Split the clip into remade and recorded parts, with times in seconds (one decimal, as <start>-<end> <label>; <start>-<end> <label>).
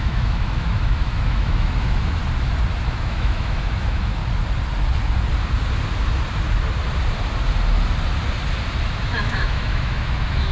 0.0-2.2 remade; 2.2-2.9 recorded; 2.9-4.2 remade; 4.2-9.0 recorded; 9.0-10.5 remade